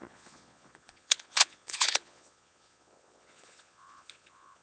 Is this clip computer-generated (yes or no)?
yes